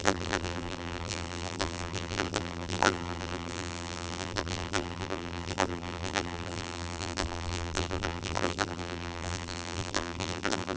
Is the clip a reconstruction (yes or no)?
yes